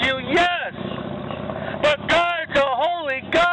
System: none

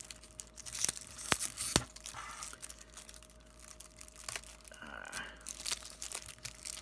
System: none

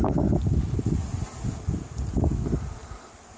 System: none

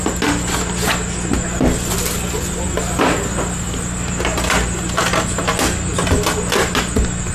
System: none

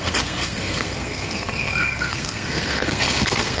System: codec, SNAC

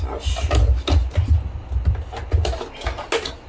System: none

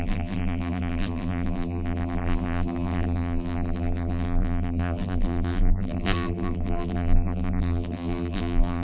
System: vocoder, BigVGAN v2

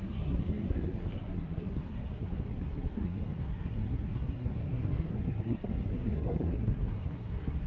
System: codec, SNAC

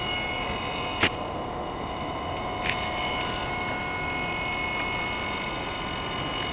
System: none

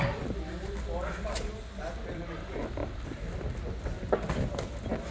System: none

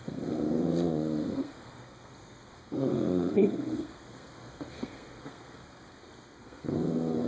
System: codec, SNAC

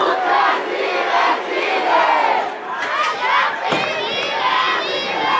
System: none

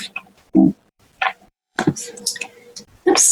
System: vocoder, BigVGAN v2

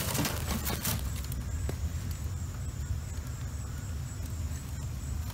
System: none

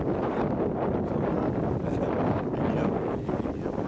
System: none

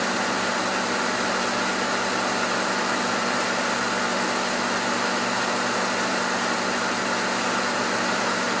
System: none